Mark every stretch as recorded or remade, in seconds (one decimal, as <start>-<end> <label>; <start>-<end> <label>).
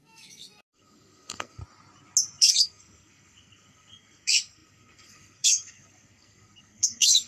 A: 0.0-1.6 remade; 1.6-2.4 recorded; 2.4-7.3 remade